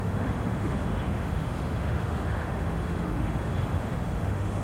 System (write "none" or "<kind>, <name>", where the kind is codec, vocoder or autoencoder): autoencoder, DAC-VAE